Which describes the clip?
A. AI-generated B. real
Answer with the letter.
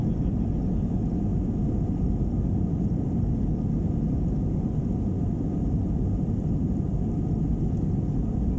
B